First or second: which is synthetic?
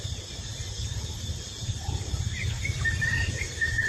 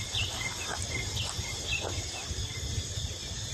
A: first